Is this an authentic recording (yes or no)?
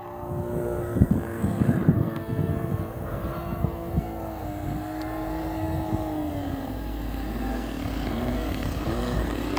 no